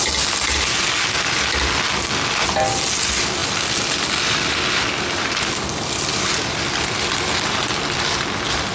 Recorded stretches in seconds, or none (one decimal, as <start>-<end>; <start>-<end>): 0.0-3.4; 7.3-8.7